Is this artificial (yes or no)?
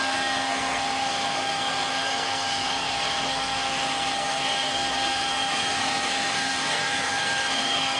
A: yes